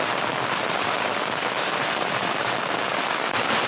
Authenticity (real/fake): real